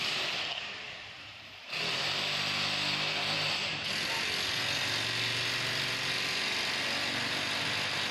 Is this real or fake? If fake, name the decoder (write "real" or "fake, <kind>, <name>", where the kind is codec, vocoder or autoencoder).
real